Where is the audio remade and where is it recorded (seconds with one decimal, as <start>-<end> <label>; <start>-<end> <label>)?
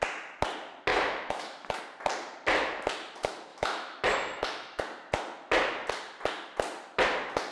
0.0-0.9 recorded; 0.9-1.8 remade; 1.8-3.5 recorded; 3.5-4.8 remade; 4.8-7.5 recorded